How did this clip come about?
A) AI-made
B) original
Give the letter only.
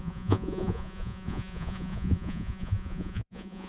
A